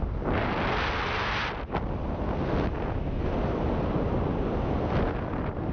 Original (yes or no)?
yes